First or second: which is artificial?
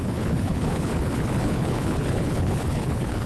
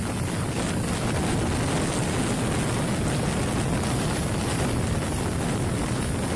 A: first